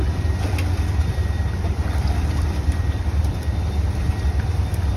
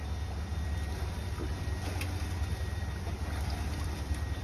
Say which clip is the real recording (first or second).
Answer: second